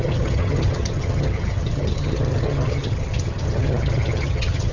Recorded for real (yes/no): no